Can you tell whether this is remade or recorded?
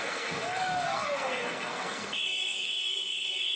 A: remade